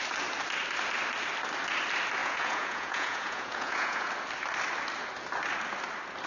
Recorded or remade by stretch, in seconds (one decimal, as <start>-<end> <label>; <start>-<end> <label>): 0.0-2.2 recorded; 2.2-4.1 remade; 4.1-6.3 recorded